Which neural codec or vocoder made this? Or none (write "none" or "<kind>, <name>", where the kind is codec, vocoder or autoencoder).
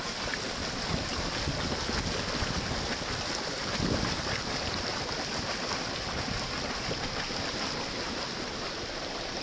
none